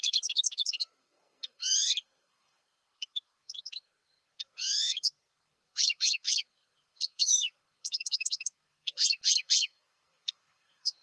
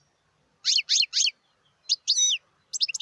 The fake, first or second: first